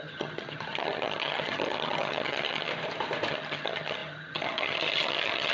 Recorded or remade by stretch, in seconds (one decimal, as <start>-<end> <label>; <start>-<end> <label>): 0.0-2.7 remade; 2.7-3.3 recorded; 3.3-5.5 remade